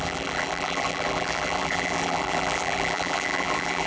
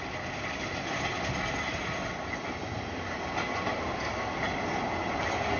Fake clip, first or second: first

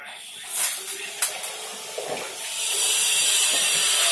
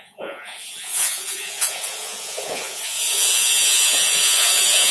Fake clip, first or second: second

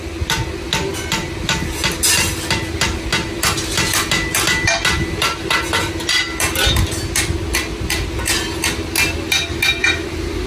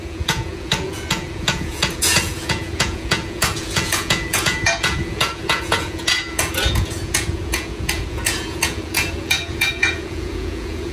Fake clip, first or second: second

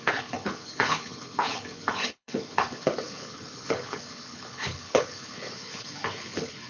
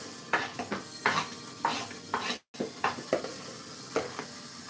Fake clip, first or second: first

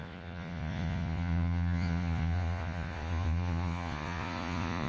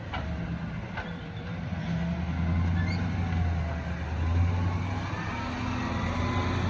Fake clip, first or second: first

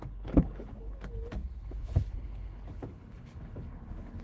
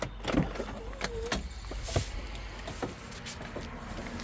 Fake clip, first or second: first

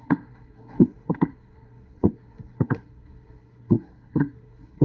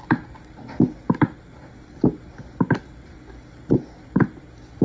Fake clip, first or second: first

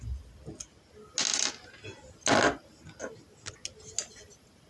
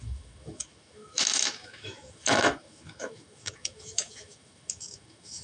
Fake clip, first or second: second